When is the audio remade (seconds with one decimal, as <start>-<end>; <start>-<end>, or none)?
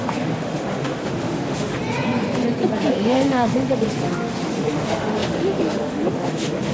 0.0-1.8; 2.9-6.7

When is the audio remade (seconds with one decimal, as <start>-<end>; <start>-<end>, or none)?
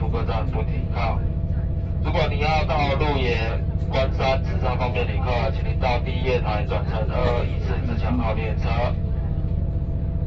0.7-2.0; 4.9-6.1; 7.2-9.6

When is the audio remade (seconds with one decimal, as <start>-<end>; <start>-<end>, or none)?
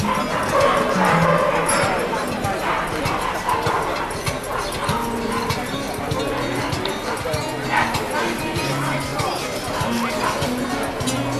none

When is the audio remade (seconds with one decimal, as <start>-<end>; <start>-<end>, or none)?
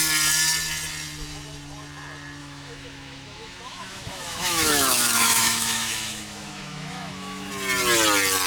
2.4-7.5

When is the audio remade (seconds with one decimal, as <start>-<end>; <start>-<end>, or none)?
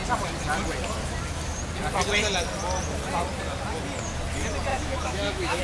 4.7-5.6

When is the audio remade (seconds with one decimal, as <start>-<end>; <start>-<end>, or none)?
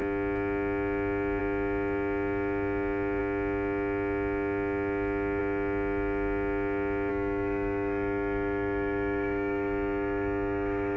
7.1-11.0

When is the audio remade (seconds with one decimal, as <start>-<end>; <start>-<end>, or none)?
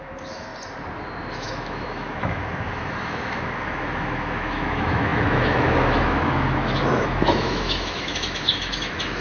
0.0-0.5; 1.3-9.2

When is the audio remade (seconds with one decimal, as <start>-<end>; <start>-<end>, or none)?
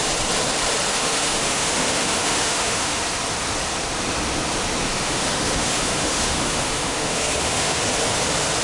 0.9-3.0; 4.9-7.9